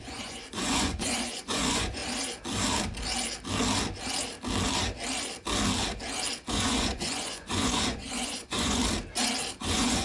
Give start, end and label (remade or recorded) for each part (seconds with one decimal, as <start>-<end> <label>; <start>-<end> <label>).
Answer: 0.0-2.0 remade; 2.0-6.5 recorded; 6.5-8.8 remade; 8.8-9.6 recorded; 9.6-10.0 remade